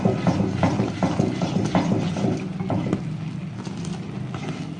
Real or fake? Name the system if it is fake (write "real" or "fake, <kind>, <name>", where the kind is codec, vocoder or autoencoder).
real